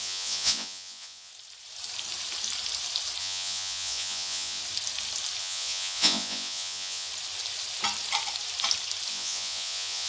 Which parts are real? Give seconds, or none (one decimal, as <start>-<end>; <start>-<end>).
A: 1.3-3.2; 4.6-5.4; 7.1-9.1